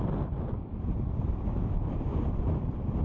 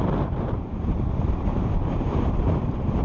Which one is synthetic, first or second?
second